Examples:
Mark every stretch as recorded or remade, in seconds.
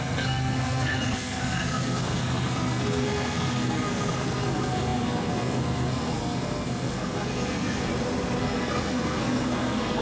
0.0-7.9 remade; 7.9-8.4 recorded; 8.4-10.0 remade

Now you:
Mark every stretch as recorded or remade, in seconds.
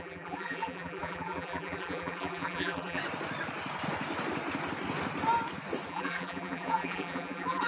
0.0-3.0 remade; 3.0-5.9 recorded; 5.9-7.7 remade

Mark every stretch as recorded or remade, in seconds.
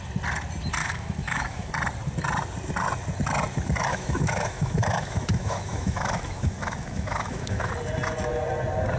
0.0-0.8 recorded; 0.8-1.7 remade; 1.7-3.9 recorded; 3.9-7.7 remade; 7.7-9.0 recorded